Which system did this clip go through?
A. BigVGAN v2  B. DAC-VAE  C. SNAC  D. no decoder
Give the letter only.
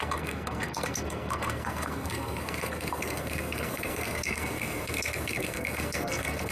C